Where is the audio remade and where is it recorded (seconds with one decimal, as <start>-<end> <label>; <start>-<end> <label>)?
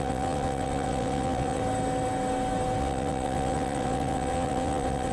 0.0-1.6 remade; 1.6-2.8 recorded; 2.8-5.1 remade